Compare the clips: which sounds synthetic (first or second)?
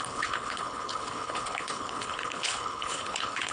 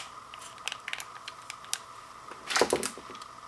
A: first